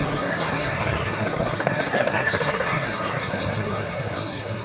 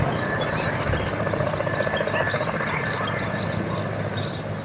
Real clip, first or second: second